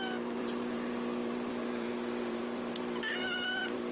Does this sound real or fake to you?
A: fake